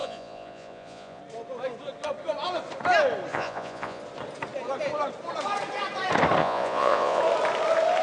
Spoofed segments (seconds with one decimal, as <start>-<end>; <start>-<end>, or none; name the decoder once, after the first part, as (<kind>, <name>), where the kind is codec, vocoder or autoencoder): 0.0-1.2 (vocoder, Vocos); 3.3-4.0; 6.4-7.2